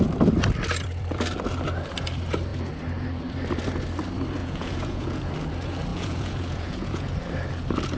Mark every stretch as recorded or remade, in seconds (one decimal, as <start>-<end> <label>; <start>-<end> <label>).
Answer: 0.0-4.4 recorded; 4.4-5.3 remade; 5.3-5.9 recorded; 5.9-7.1 remade; 7.1-8.0 recorded